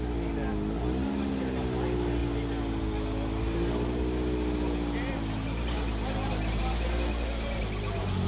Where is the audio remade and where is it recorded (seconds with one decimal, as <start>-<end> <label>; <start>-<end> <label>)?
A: 0.0-8.3 recorded